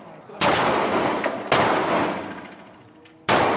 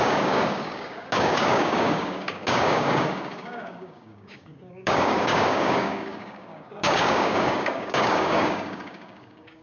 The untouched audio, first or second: first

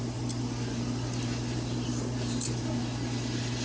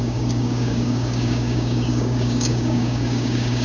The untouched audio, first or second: first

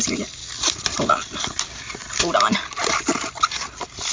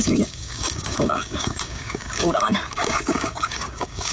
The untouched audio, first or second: first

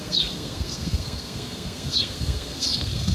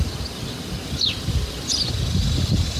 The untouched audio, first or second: second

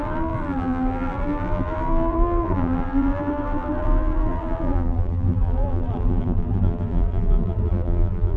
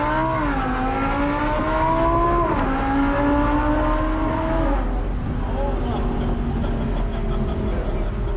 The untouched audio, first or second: second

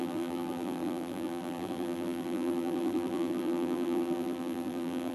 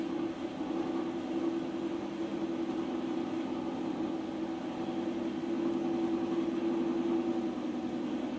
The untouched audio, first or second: second